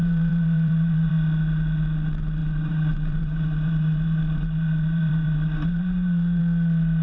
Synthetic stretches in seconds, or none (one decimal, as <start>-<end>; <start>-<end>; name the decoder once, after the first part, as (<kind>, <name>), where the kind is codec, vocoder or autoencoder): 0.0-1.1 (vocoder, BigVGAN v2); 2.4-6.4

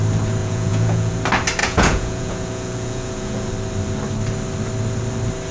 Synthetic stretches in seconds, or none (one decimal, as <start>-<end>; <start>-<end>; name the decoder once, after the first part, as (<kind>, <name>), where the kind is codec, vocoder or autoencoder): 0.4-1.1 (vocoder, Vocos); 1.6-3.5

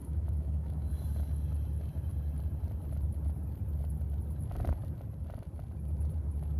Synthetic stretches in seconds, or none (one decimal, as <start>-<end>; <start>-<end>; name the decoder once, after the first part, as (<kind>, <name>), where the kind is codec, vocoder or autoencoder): 0.0-0.9 (autoencoder, DAC-VAE)